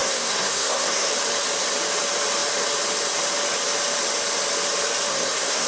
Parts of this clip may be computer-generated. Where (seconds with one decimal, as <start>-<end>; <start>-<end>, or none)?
0.0-1.1; 5.1-5.7